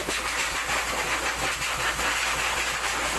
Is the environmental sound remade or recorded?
recorded